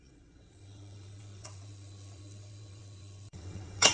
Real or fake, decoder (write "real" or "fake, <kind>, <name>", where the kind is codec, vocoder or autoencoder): fake, vocoder, WaveNeXt